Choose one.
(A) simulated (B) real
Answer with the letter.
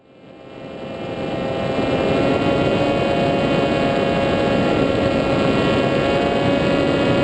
B